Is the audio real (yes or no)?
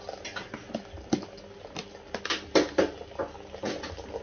yes